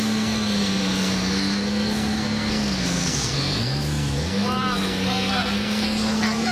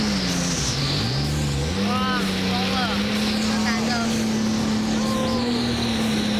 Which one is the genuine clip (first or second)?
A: second